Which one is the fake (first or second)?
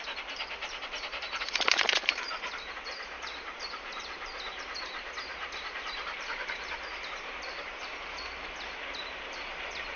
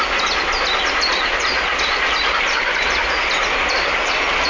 first